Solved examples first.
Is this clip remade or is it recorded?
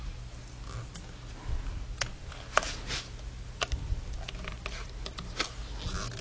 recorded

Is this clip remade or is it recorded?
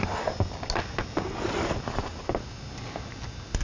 recorded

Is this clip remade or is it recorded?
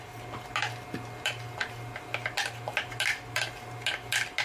recorded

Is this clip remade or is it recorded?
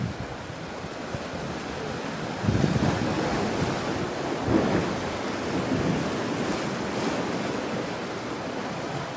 recorded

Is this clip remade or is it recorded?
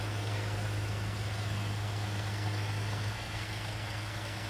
remade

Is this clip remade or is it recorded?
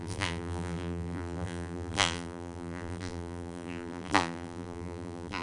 remade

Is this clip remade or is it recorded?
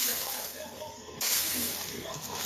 remade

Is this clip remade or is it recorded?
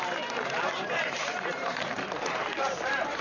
remade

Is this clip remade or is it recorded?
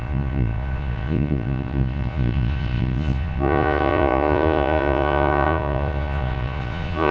remade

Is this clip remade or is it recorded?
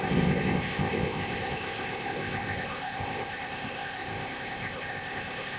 remade